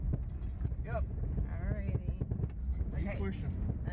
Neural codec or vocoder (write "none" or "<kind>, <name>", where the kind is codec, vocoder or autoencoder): none